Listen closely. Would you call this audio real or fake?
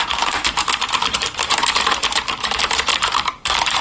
fake